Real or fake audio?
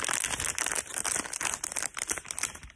real